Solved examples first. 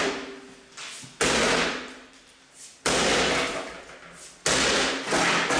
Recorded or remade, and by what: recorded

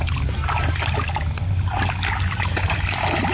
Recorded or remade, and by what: recorded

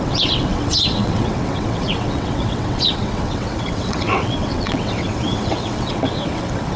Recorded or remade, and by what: remade, vocoder, WaveNeXt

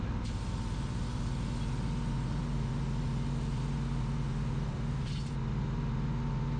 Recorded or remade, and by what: recorded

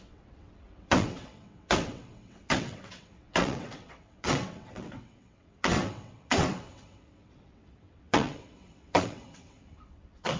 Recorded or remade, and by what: remade, vocoder, WaveNeXt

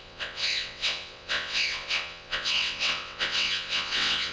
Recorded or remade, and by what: remade, vocoder, WaveNeXt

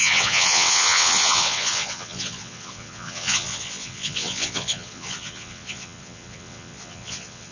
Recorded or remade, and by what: remade, vocoder, WaveNeXt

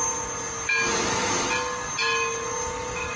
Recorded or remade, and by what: recorded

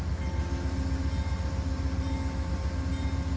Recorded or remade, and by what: recorded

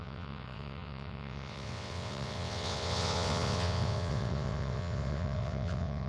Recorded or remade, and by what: remade, vocoder, WaveNeXt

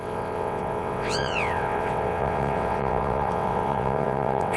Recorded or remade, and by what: remade, vocoder, WaveNeXt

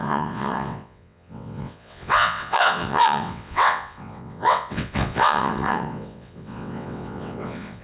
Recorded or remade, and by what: remade, vocoder, WaveNeXt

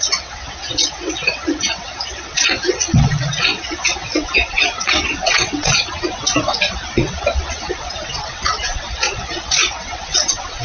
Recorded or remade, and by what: remade, vocoder, WaveNeXt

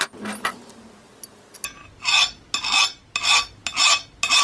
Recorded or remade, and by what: recorded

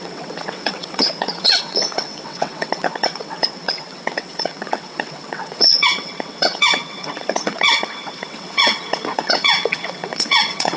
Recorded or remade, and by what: remade, vocoder, WaveNeXt